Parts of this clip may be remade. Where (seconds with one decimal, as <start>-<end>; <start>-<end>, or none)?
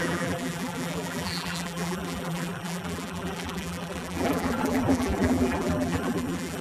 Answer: 0.0-6.6